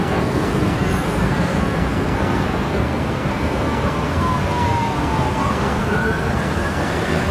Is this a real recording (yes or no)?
no